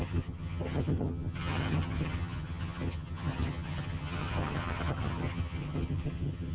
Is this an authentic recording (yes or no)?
no